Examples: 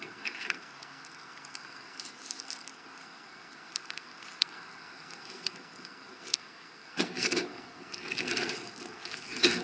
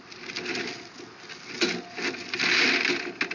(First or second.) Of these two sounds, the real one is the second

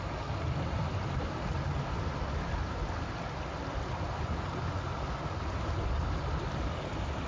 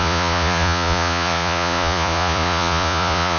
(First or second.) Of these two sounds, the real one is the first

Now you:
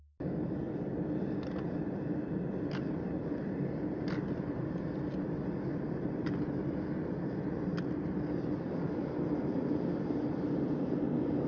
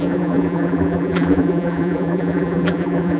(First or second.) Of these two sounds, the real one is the first